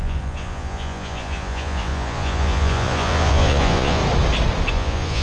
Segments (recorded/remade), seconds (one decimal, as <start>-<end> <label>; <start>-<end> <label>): 0.0-4.0 remade; 4.0-4.7 recorded; 4.7-5.2 remade